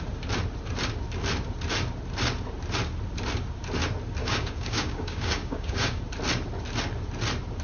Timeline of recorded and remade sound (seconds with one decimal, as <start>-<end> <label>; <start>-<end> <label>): 0.0-4.2 recorded; 4.2-6.0 remade; 6.0-7.6 recorded